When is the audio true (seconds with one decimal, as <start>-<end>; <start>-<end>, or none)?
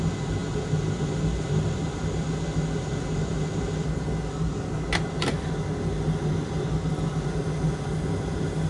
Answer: 0.0-8.7